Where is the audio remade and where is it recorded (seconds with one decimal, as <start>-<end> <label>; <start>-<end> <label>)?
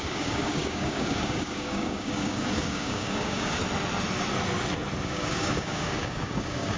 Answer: 0.0-3.6 remade; 3.6-5.0 recorded; 5.0-6.8 remade